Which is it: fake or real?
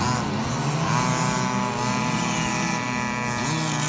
real